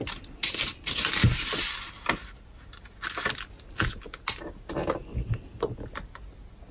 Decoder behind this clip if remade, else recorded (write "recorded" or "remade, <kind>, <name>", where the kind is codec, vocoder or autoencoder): recorded